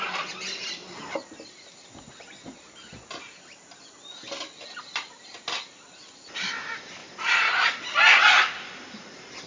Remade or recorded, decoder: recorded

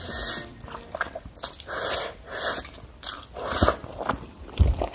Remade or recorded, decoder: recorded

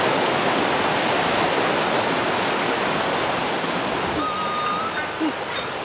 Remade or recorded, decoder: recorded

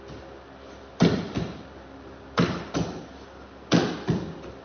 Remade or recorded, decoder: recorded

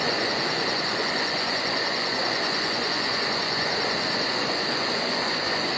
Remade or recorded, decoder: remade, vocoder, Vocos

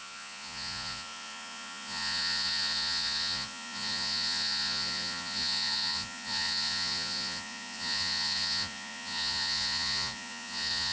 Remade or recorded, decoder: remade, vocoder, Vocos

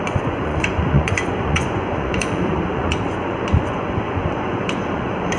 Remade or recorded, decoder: remade, vocoder, Vocos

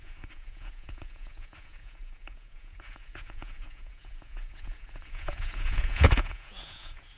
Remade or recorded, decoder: remade, vocoder, Vocos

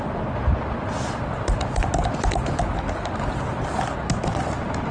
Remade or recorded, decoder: recorded